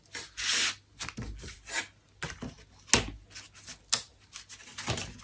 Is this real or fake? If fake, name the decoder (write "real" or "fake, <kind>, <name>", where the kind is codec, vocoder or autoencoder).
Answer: real